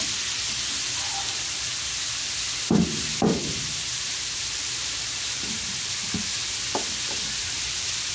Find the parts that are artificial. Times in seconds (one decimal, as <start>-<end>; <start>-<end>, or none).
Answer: 3.4-6.4; 7.4-8.1